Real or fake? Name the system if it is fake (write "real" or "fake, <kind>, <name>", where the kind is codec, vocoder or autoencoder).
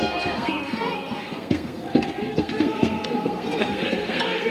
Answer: fake, codec, SNAC